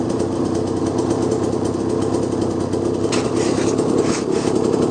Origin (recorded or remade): recorded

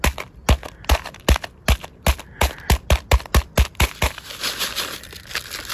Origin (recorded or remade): recorded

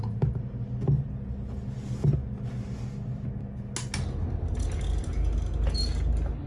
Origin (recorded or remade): recorded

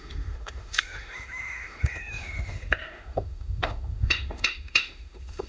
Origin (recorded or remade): remade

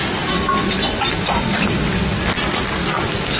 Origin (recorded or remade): recorded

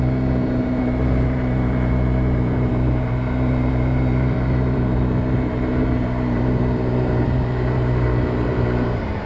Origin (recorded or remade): remade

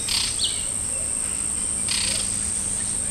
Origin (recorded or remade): recorded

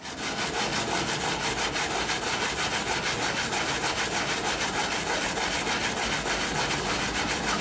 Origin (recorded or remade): recorded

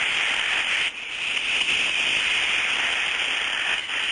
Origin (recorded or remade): recorded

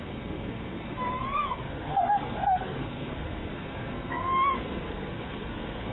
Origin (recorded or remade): remade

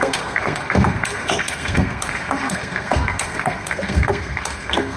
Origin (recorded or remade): remade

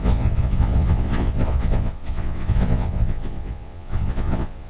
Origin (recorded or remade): remade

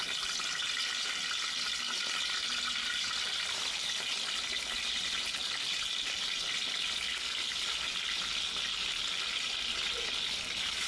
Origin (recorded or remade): recorded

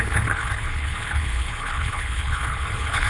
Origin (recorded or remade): remade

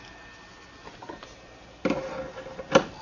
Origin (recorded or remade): recorded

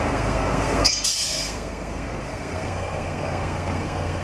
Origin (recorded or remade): remade